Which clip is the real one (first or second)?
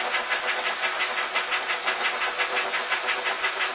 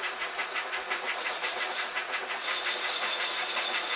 first